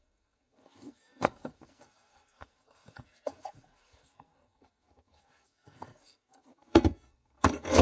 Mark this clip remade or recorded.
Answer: remade